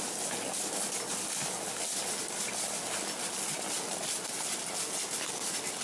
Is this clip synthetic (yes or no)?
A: no